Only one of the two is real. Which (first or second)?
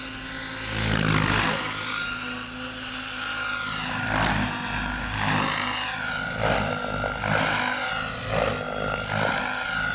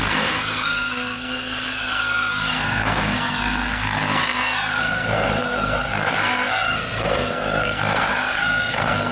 first